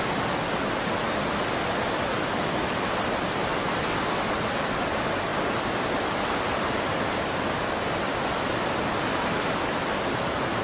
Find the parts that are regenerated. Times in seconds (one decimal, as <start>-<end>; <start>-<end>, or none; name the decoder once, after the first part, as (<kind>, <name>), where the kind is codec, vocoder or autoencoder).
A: 5.3-9.8 (vocoder, BigVGAN v2)